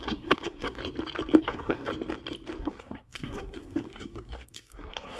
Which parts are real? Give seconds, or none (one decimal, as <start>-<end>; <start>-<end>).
0.8-1.4; 1.9-2.6